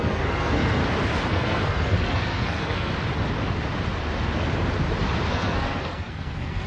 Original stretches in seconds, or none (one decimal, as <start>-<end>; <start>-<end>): 0.8-1.3; 2.9-5.3